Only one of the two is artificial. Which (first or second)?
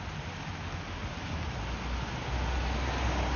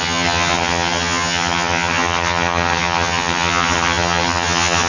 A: second